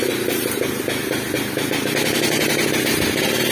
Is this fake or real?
real